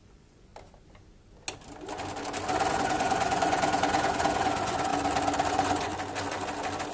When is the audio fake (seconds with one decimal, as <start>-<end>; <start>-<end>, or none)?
0.0-0.5; 2.7-4.9; 5.5-5.9